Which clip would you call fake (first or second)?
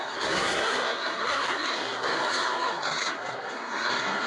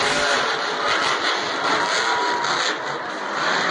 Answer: first